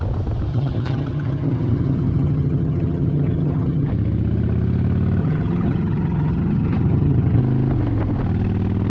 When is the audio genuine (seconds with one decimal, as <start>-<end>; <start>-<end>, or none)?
0.0-0.5; 3.9-5.2; 7.4-8.9